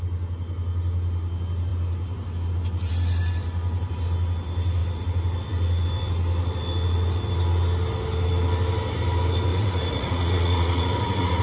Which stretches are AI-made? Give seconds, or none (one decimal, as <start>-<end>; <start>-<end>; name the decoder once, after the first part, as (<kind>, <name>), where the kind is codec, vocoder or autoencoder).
9.5-11.4 (vocoder, Vocos)